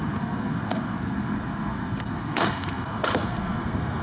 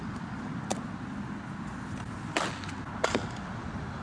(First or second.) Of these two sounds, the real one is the second